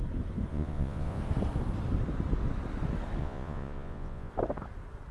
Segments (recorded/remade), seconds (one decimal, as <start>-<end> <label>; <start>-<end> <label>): 0.0-0.5 recorded; 0.5-1.2 remade; 1.2-3.2 recorded; 3.2-4.3 remade; 4.3-5.1 recorded